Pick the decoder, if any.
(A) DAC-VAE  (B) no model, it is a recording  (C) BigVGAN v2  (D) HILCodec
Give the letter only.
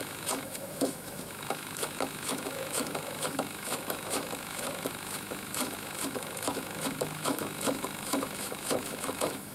A